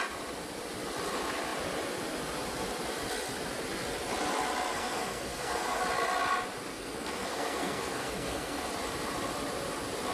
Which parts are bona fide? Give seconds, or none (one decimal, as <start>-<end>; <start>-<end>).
0.0-4.7; 5.8-6.7; 8.7-10.1